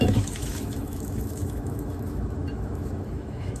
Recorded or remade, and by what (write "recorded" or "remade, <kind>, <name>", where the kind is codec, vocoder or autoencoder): remade, autoencoder, DAC-VAE